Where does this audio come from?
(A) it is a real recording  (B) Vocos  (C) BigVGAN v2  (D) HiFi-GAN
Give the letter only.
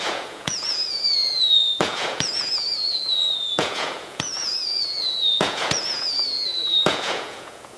B